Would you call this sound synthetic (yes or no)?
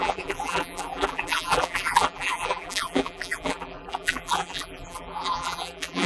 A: yes